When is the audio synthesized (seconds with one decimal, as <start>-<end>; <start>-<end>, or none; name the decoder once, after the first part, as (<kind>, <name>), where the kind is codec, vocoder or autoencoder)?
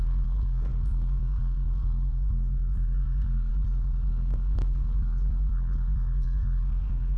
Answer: 0.0-3.5 (codec, SNAC); 4.1-7.2